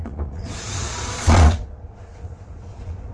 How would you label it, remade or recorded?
remade